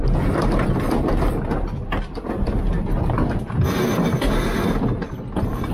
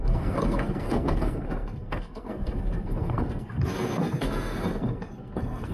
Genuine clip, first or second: first